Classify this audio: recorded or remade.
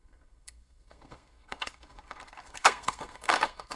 remade